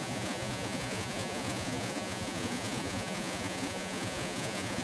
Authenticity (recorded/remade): remade